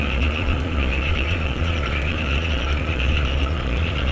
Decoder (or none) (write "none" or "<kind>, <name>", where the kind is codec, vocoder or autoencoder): vocoder, Vocos